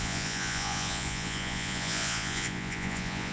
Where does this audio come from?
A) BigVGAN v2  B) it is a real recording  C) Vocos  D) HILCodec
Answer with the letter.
C